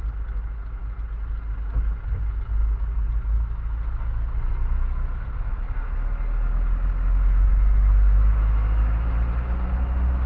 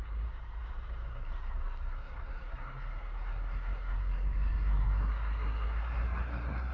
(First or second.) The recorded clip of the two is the first